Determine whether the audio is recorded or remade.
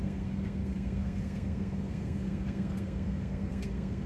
remade